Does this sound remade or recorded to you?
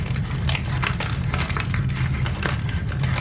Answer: recorded